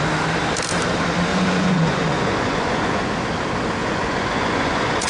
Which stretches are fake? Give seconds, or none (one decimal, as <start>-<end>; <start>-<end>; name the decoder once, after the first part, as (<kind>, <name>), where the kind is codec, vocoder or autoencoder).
1.3-3.1 (vocoder, Vocos); 3.8-5.1

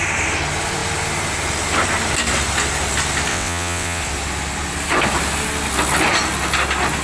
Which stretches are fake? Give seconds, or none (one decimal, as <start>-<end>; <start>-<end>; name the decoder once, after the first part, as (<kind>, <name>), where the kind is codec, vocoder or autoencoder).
3.3-4.0 (vocoder, WaveNeXt)

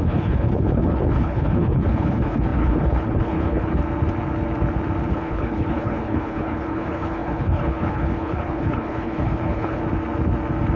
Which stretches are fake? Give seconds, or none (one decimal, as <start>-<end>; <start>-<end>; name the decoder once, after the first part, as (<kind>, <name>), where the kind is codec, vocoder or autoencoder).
0.0-3.8 (codec, HILCodec); 5.1-9.8

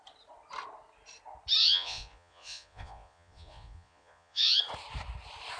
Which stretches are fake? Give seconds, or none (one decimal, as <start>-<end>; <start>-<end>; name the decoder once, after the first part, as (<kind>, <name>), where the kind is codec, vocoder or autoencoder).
1.6-4.6 (vocoder, Vocos)

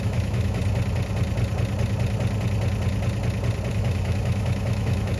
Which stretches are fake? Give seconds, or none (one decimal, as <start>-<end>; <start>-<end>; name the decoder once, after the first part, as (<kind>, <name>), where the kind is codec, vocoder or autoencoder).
0.0-0.6 (autoencoder, DAC-VAE); 3.7-5.2

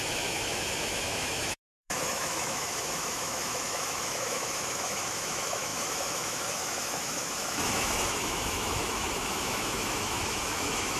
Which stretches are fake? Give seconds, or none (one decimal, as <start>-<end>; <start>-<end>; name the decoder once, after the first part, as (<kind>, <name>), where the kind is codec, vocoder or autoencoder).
0.0-11.0 (autoencoder, DAC-VAE)

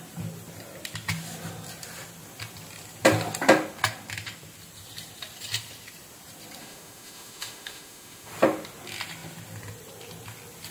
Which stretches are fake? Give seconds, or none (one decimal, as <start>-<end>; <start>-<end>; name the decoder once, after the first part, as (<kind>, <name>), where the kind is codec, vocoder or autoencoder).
6.6-8.3 (autoencoder, DAC-VAE)